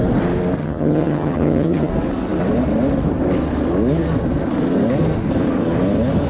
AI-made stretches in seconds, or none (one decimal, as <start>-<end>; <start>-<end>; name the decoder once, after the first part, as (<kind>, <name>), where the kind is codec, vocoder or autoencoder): 0.6-1.9 (vocoder, HiFi-GAN)